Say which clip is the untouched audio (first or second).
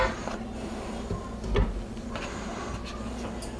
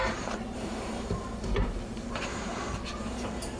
first